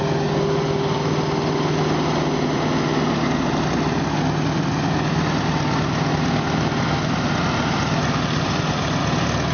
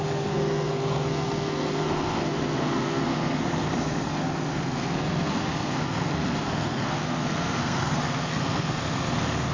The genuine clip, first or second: first